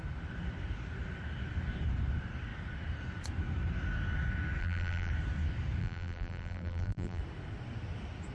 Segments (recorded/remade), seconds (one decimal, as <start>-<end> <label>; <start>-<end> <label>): 0.0-4.6 recorded; 4.6-5.1 remade; 5.1-5.8 recorded; 5.8-7.2 remade; 7.2-8.3 recorded